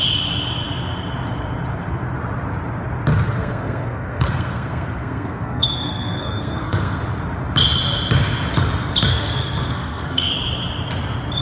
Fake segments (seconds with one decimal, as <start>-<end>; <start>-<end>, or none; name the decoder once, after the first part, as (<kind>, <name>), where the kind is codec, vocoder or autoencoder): 3.4-7.0 (codec, SNAC); 9.1-10.3